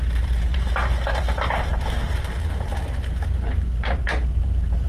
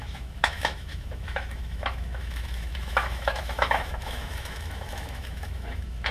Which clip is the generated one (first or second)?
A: second